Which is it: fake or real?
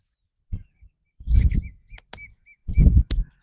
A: real